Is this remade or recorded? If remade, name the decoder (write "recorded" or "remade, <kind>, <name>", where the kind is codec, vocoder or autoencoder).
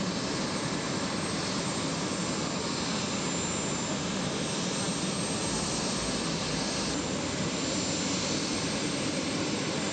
recorded